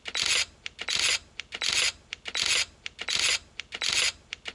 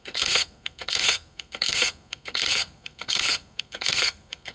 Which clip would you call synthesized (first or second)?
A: second